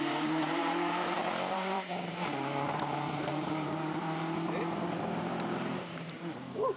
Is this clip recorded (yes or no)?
no